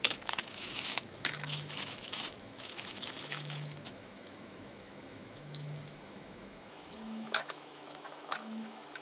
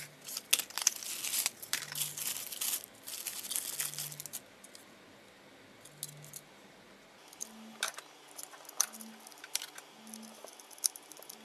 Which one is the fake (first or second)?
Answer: first